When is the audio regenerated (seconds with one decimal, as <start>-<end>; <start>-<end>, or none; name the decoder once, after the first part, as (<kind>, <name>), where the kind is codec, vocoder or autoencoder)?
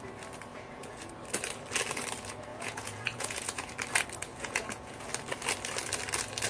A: 0.5-1.1 (vocoder, Vocos); 2.5-3.7; 4.3-5.1